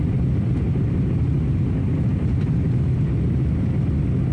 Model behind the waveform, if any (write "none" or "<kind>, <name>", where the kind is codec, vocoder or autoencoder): none